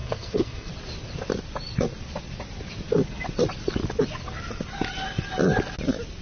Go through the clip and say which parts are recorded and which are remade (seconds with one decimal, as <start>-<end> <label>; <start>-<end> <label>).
0.0-0.7 remade; 0.7-6.2 recorded